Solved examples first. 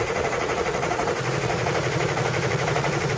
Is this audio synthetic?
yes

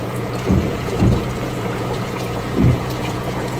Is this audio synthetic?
yes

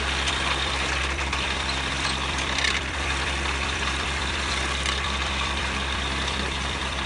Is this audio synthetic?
yes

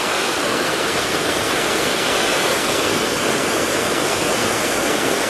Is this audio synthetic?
yes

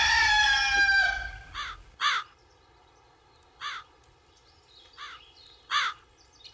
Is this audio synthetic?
no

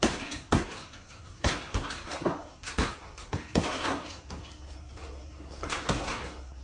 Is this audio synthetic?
yes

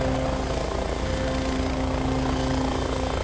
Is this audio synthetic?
no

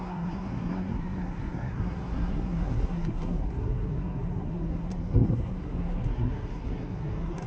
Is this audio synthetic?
yes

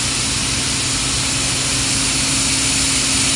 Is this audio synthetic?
no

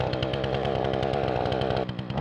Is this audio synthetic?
no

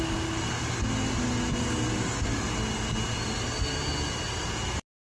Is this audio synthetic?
no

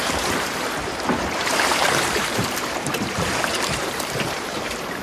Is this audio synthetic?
yes